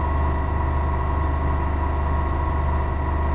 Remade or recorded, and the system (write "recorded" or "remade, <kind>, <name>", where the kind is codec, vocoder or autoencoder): recorded